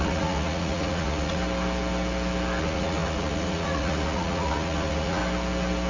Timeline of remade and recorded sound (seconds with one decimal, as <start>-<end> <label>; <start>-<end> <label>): 0.0-1.4 remade; 1.4-2.6 recorded; 2.6-5.2 remade; 5.2-5.9 recorded